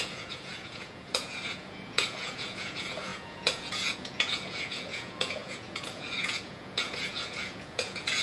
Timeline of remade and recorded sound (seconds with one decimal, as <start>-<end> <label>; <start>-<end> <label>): 0.0-8.2 remade